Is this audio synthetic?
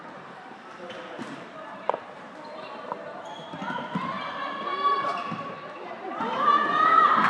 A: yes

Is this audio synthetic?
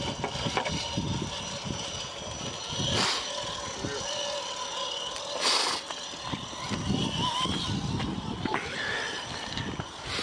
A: no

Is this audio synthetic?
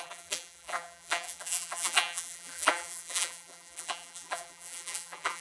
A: yes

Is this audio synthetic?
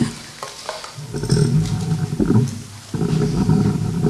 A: no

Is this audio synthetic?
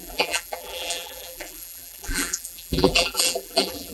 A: yes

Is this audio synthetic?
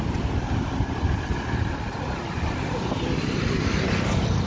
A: no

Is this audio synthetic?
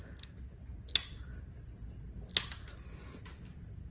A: no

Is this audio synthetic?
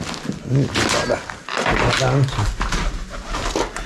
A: no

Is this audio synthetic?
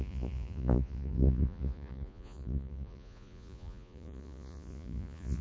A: yes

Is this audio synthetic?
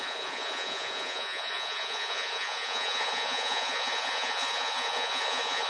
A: yes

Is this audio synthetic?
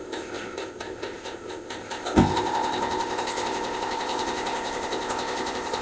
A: yes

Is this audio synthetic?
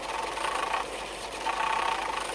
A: no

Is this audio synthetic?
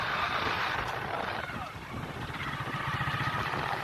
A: yes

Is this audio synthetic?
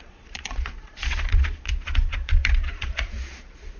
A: yes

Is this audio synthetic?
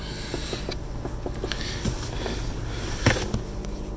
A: no